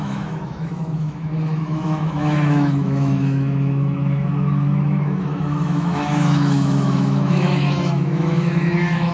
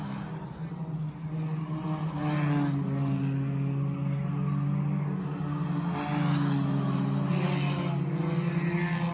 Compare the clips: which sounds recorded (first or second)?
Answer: second